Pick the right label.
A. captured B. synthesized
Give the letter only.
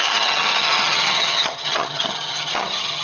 B